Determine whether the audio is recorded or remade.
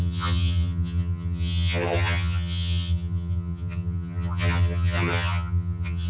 remade